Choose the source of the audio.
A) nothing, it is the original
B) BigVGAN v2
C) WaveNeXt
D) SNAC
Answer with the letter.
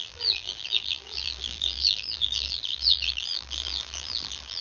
B